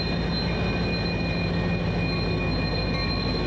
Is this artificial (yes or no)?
no